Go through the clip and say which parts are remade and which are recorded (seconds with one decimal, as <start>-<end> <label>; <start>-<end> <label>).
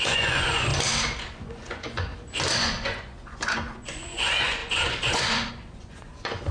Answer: 0.0-0.7 remade; 0.7-1.3 recorded; 1.3-2.1 remade; 2.1-2.6 recorded; 2.6-6.5 remade